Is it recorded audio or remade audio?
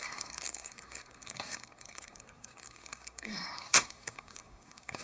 remade